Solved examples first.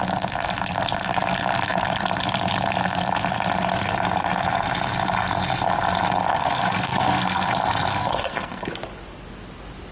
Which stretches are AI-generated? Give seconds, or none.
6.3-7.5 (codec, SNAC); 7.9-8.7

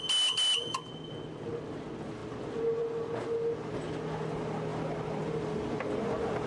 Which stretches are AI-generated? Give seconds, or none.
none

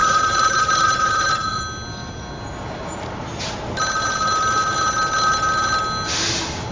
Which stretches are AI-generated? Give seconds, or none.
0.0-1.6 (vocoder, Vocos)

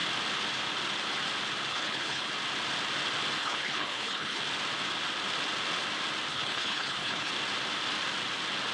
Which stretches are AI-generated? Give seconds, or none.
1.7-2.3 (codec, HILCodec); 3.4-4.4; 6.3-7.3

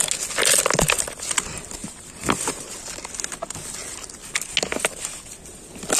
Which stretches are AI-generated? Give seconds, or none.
1.8-2.5 (vocoder, BigVGAN v2)

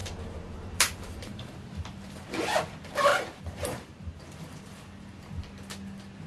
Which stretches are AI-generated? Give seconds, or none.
0.0-1.5 (vocoder, BigVGAN v2); 3.1-4.2

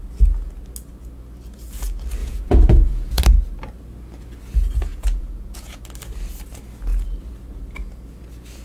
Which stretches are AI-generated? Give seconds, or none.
2.2-3.2 (vocoder, Vocos); 4.9-5.8